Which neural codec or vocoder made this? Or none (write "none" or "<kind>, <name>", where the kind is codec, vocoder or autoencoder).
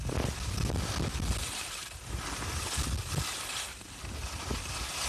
none